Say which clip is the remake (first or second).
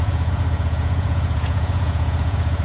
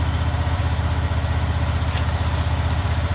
first